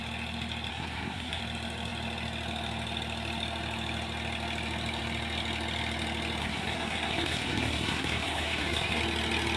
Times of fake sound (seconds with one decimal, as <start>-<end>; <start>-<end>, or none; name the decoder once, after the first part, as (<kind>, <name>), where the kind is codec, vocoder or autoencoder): 0.7-1.4 (codec, SNAC); 6.4-9.0